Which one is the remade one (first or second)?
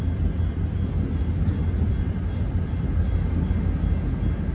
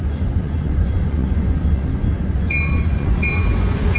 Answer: second